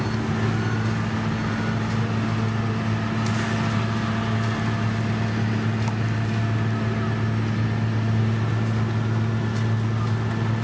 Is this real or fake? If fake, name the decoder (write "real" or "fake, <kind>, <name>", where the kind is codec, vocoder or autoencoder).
real